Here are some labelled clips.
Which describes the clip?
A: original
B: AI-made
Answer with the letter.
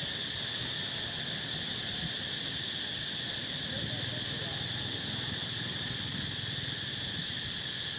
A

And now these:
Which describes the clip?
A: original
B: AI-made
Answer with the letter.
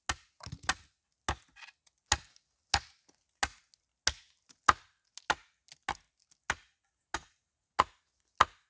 A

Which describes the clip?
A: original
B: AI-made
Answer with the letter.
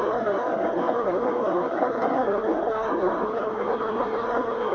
B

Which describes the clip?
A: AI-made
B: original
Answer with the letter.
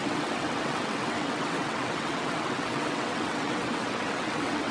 A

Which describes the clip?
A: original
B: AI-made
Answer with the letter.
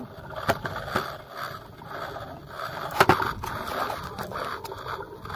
B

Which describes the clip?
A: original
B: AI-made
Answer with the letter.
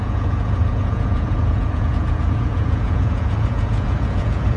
B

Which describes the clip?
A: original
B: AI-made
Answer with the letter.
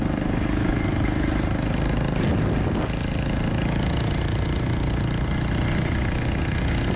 A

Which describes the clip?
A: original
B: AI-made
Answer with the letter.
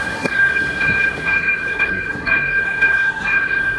B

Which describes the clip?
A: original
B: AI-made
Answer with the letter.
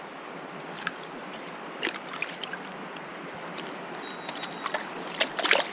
A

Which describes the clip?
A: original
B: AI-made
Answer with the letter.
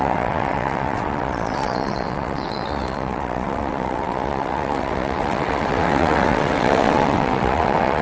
B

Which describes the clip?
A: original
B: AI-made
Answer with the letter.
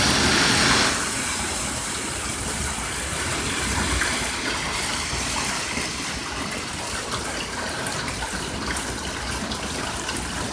A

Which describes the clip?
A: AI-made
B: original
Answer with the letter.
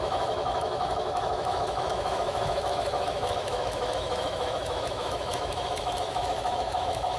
A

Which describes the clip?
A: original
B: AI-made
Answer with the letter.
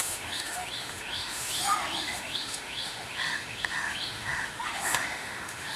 B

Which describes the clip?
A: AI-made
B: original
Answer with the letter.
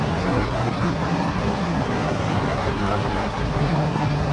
A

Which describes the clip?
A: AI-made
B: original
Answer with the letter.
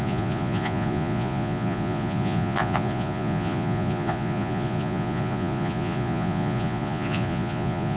A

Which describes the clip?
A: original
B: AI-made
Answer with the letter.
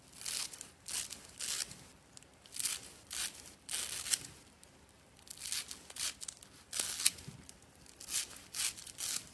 A